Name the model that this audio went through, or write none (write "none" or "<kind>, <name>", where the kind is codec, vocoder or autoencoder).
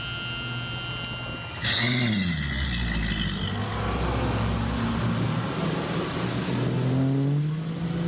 none